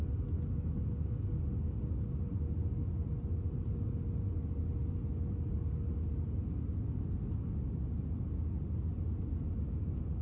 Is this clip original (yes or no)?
yes